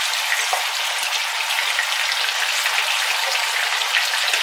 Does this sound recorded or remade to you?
recorded